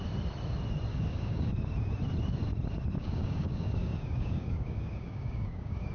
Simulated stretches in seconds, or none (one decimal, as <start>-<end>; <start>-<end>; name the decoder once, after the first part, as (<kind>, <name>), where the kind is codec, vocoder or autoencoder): 0.9-1.5 (codec, DAC); 3.0-5.9